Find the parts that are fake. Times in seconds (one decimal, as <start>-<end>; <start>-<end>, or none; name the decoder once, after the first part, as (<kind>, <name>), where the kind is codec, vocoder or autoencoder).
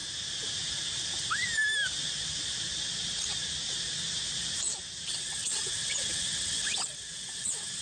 5.1-7.8 (vocoder, WaveNeXt)